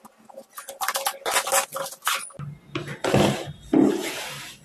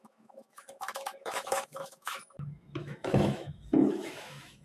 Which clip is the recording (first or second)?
first